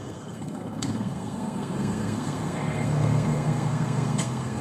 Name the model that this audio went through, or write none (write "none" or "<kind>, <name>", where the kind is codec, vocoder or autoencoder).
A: codec, SNAC